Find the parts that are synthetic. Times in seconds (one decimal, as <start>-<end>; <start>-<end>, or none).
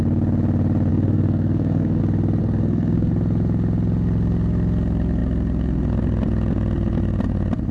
0.9-2.0; 2.4-3.1